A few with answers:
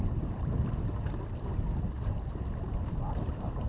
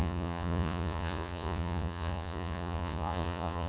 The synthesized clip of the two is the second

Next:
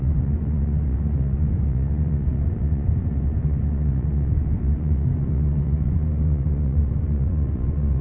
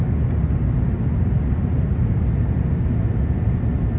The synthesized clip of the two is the first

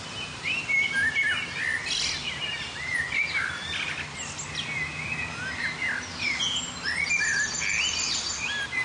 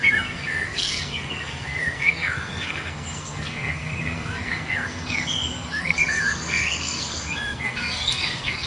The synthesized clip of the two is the second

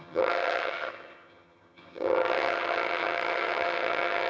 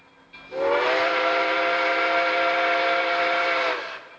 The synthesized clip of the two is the first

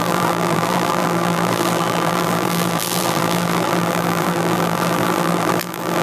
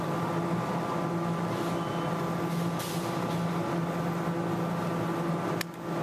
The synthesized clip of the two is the first